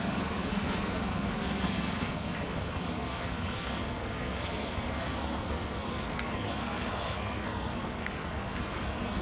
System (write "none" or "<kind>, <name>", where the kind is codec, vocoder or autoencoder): codec, SNAC